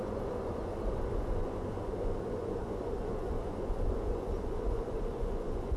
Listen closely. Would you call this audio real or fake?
fake